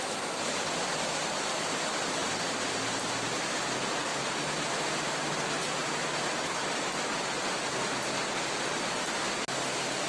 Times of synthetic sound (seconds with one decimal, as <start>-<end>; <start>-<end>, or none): 2.2-3.6; 4.1-5.4